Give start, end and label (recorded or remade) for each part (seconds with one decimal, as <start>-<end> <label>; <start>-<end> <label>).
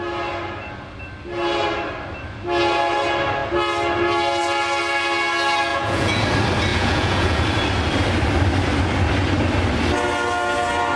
0.0-5.7 recorded; 5.7-6.2 remade; 6.2-6.7 recorded; 6.7-7.4 remade; 7.4-11.0 recorded